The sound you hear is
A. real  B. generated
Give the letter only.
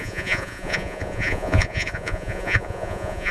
B